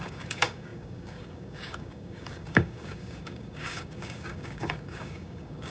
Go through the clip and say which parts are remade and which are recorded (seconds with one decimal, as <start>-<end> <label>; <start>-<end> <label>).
0.0-5.7 remade